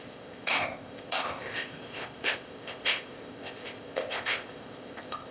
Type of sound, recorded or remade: remade